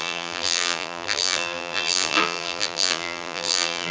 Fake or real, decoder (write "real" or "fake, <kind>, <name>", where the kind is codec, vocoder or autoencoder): fake, vocoder, BigVGAN v2